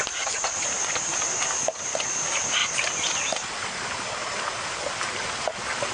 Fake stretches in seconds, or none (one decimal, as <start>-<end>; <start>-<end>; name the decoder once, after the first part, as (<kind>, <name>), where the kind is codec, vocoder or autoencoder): none